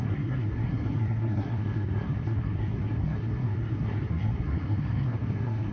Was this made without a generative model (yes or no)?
no